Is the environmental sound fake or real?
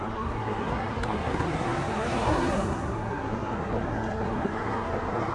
fake